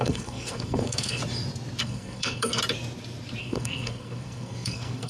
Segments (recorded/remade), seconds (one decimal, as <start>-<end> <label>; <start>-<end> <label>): 0.0-1.2 remade; 1.2-1.8 recorded; 1.8-2.6 remade; 2.6-3.4 recorded; 3.4-5.1 remade